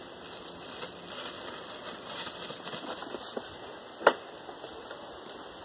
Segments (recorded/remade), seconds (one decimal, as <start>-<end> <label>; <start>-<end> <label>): 0.0-5.6 recorded